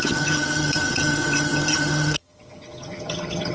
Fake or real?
fake